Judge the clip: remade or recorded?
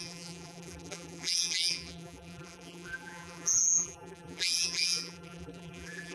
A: remade